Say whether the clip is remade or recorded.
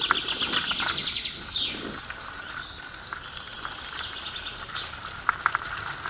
recorded